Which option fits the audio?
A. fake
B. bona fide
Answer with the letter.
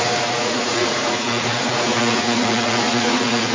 A